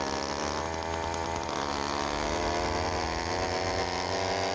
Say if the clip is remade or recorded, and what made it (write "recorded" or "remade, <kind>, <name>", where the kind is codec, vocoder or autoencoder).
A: recorded